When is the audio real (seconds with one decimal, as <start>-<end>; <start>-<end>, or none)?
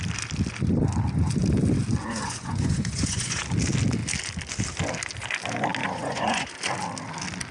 0.0-2.0; 3.4-5.8; 6.5-7.5